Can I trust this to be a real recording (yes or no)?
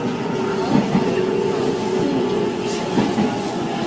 no